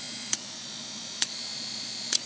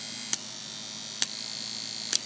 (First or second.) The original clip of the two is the second